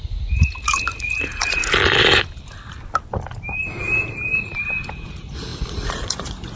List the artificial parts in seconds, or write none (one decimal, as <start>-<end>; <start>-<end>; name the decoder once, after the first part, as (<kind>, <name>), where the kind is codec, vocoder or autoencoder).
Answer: 0.0-1.6 (vocoder, Vocos); 4.9-6.6

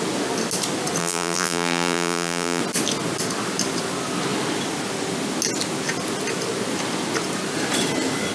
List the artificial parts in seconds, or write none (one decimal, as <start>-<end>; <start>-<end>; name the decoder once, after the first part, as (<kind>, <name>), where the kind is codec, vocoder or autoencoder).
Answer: 1.0-2.6 (vocoder, BigVGAN v2)

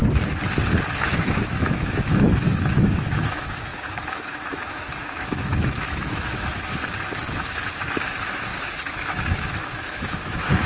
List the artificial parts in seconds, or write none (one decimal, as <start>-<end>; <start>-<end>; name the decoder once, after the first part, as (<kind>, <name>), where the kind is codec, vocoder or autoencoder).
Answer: 1.0-6.8 (autoencoder, DAC-VAE); 7.7-10.7